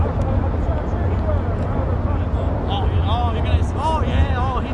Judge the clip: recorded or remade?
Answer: recorded